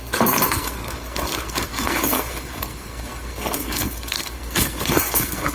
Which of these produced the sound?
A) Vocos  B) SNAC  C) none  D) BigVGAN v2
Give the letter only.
B